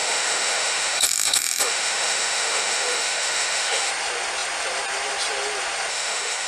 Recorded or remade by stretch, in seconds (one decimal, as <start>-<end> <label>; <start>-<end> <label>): 0.0-3.9 remade; 3.9-5.9 recorded; 5.9-6.5 remade

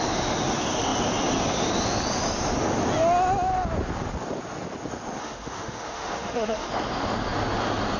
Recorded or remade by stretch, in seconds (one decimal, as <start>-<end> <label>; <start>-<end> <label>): 0.0-5.2 recorded; 5.2-6.7 remade; 6.7-8.0 recorded